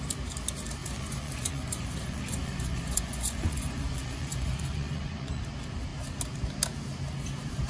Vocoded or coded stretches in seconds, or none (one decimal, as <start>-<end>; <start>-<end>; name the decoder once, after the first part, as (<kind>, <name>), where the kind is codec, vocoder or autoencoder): 0.8-5.4 (vocoder, Vocos)